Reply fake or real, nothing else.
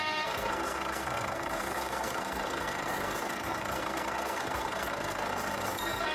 fake